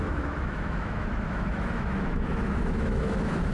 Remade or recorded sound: remade